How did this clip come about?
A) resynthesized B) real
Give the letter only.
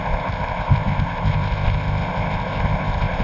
A